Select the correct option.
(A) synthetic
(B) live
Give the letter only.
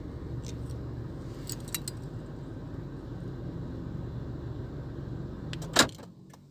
B